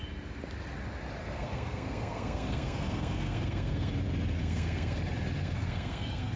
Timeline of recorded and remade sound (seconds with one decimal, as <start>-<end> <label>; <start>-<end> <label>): 0.0-1.2 recorded; 1.2-3.9 remade; 3.9-4.4 recorded; 4.4-5.0 remade; 5.0-5.4 recorded; 5.4-6.4 remade